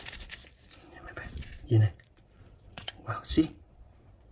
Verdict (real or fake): fake